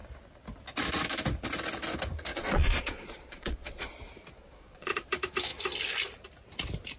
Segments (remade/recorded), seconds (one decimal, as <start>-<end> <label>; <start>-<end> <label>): 0.0-2.3 recorded; 2.3-3.9 remade; 3.9-4.4 recorded; 4.4-5.1 remade; 5.1-7.0 recorded